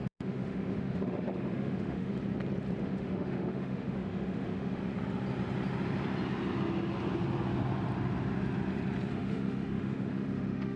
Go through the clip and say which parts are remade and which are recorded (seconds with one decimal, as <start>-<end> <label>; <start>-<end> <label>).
0.0-2.1 remade; 2.1-2.8 recorded; 2.8-4.8 remade; 4.8-9.1 recorded; 9.1-10.8 remade